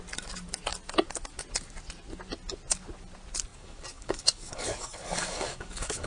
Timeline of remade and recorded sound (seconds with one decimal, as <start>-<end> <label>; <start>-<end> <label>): 0.0-3.5 recorded; 3.5-6.1 remade